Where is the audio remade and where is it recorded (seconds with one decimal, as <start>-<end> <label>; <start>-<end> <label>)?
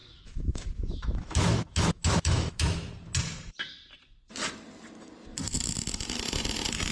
0.0-2.9 remade; 2.9-6.9 recorded